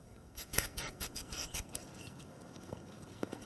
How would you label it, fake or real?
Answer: fake